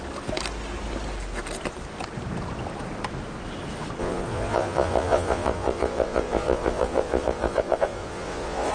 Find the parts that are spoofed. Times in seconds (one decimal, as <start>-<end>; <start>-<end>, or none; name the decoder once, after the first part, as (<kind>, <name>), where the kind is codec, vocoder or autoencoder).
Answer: 4.0-8.7 (vocoder, Vocos)